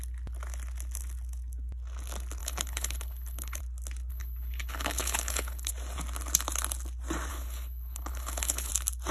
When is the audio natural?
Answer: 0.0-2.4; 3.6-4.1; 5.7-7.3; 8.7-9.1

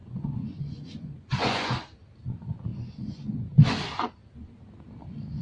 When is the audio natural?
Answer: 1.8-2.7; 3.4-5.4

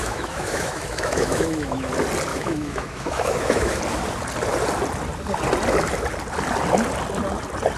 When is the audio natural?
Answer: 1.9-2.3; 3.8-7.8

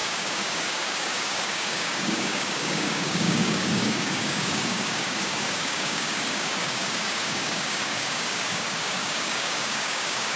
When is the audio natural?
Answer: none

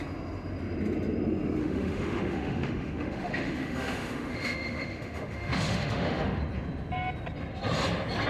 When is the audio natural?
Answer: 0.0-1.6; 6.4-8.3

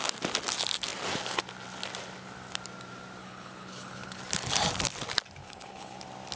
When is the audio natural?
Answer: 0.0-3.2; 4.2-5.4; 6.0-6.4

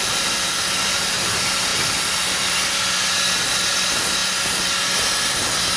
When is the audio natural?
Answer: 0.0-5.8